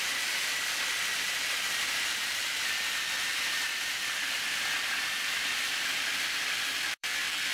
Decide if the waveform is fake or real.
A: fake